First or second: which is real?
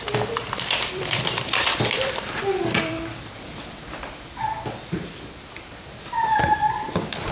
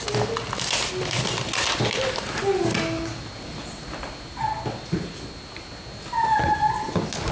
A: second